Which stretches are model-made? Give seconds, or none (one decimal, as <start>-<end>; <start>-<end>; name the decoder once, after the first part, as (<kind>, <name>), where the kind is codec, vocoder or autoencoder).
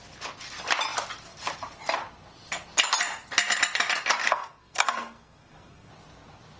4.2-5.9 (codec, SNAC)